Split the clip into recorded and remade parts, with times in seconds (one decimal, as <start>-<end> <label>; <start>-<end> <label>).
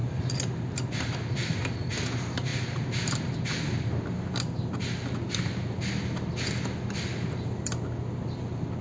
0.0-8.8 recorded